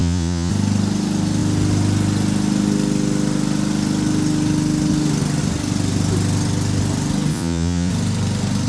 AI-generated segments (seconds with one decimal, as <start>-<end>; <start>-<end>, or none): 0.0-0.5; 7.3-7.9